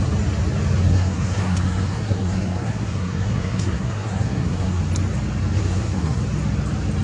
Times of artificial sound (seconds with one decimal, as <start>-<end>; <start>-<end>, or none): 0.9-4.8; 5.6-6.2